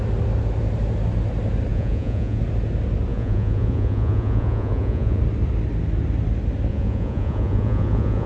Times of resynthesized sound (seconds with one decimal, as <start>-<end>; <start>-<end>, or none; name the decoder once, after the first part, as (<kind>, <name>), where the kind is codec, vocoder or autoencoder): 1.7-2.4 (vocoder, Vocos); 3.1-5.2; 6.7-8.3